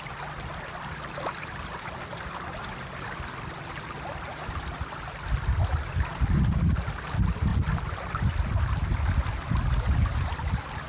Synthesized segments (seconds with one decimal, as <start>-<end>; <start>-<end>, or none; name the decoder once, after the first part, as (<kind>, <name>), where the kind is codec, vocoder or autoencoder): none